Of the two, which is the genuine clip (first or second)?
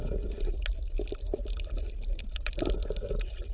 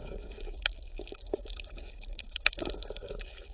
first